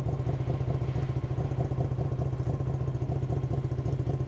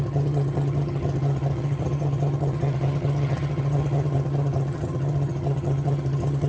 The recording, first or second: first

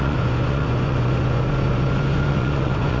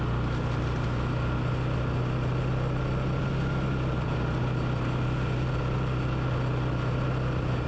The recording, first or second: second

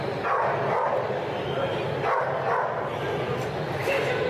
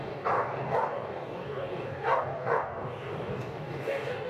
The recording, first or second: first